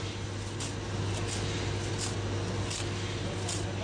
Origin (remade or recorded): recorded